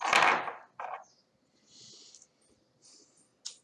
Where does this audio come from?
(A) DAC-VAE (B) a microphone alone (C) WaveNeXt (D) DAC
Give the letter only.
B